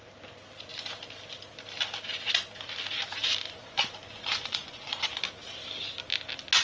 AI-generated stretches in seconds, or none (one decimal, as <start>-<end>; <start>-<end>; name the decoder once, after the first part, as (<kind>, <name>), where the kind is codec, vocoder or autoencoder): 3.6-5.0 (vocoder, Vocos)